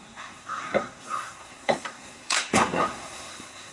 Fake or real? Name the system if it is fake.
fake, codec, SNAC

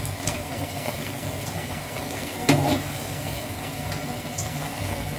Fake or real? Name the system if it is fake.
fake, codec, SNAC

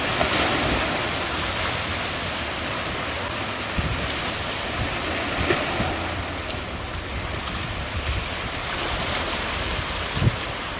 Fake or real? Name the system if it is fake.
real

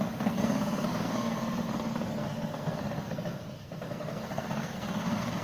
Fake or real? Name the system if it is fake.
fake, codec, SNAC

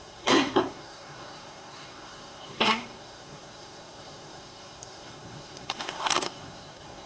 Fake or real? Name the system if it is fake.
fake, codec, SNAC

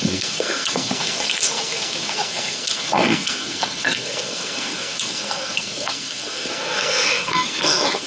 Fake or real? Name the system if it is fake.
fake, codec, SNAC